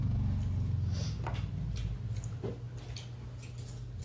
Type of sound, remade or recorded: recorded